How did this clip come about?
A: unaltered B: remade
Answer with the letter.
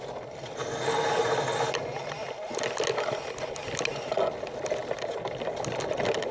A